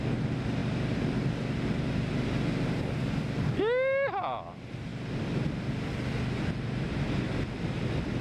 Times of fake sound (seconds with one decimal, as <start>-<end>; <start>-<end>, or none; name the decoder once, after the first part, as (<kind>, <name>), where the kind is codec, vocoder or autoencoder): none